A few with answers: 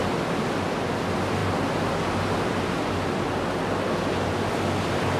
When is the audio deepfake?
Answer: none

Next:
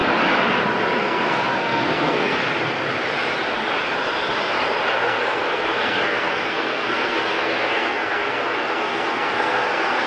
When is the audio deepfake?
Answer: 1.0-2.4 (codec, SNAC); 4.9-10.1

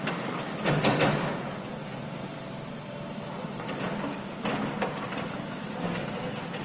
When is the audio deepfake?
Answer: 3.3-3.8 (vocoder, BigVGAN v2)

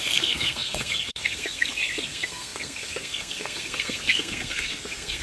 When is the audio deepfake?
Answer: 0.0-5.2 (codec, SNAC)

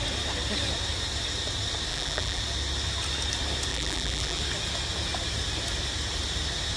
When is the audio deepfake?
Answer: 1.9-2.4 (vocoder, BigVGAN v2); 3.7-4.4

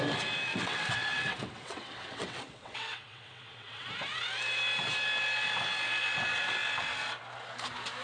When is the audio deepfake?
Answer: 0.5-3.9 (vocoder, WaveNeXt)